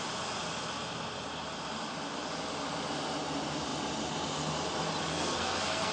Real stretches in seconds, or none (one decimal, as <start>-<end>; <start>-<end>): 0.0-5.1